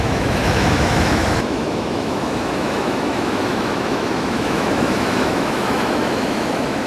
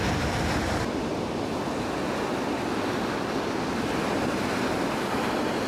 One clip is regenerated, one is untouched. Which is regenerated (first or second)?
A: first